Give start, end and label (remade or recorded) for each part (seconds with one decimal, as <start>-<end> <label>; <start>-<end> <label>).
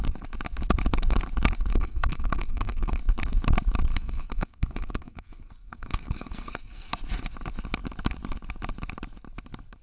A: 0.0-1.7 recorded; 1.7-3.0 remade; 3.0-3.9 recorded; 3.9-6.9 remade; 6.9-9.8 recorded